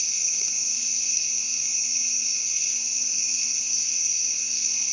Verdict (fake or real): fake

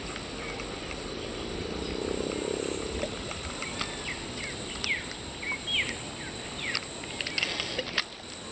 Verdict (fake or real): real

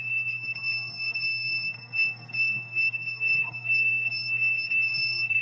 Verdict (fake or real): fake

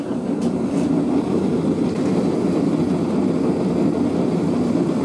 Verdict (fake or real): real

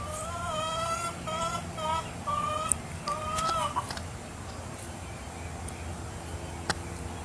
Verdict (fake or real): real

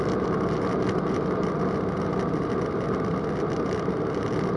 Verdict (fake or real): real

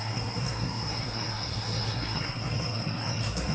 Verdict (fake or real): fake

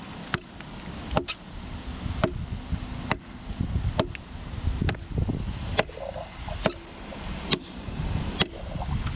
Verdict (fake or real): real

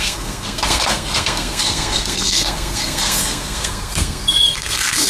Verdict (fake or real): fake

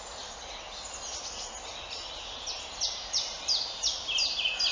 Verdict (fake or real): real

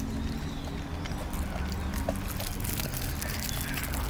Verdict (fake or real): real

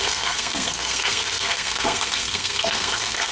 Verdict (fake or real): fake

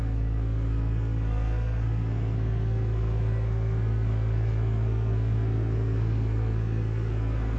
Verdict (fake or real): fake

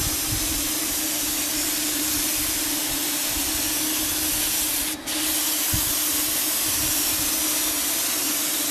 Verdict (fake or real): real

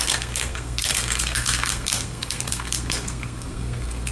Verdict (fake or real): fake